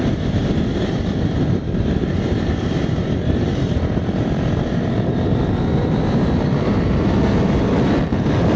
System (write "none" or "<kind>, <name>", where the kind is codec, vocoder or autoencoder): vocoder, BigVGAN v2